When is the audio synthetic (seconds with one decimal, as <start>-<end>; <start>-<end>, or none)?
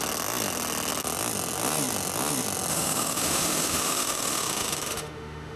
2.7-5.6